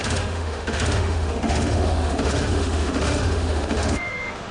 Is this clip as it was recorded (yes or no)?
no